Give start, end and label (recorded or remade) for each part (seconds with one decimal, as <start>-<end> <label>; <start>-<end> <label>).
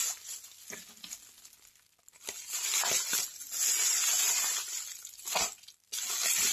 0.0-6.5 recorded